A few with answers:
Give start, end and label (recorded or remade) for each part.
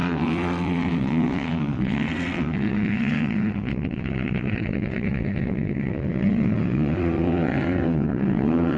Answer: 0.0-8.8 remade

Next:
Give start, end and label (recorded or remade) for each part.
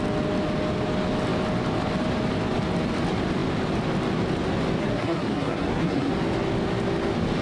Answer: 0.0-4.8 recorded; 4.8-6.1 remade; 6.1-7.4 recorded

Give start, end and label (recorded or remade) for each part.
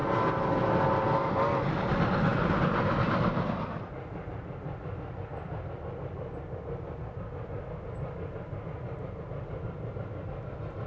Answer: 0.0-10.9 recorded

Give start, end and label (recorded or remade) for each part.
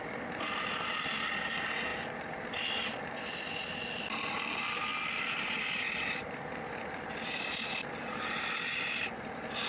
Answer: 0.0-9.7 recorded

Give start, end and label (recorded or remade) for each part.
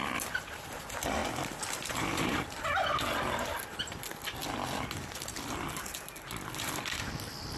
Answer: 0.0-1.2 remade; 1.2-1.9 recorded; 1.9-4.4 remade; 4.4-6.1 recorded; 6.1-7.6 remade